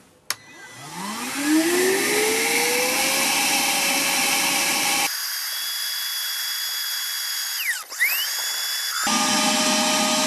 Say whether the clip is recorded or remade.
recorded